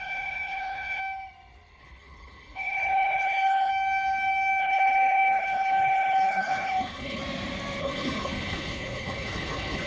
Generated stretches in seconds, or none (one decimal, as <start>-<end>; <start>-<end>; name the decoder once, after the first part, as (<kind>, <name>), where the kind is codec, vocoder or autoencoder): 0.0-1.0 (codec, HILCodec); 1.8-3.7; 4.6-7.2; 7.8-9.9